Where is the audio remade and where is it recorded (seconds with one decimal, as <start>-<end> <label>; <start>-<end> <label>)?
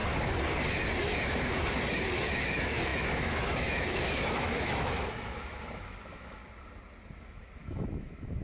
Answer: 0.0-1.9 recorded; 1.9-6.4 remade; 6.4-7.2 recorded; 7.2-8.4 remade